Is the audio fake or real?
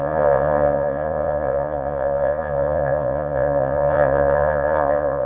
fake